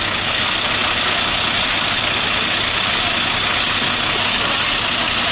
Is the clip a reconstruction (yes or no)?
no